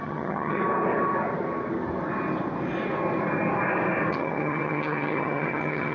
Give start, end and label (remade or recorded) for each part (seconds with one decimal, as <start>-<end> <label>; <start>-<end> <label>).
0.0-0.6 remade; 0.6-4.1 recorded; 4.1-5.9 remade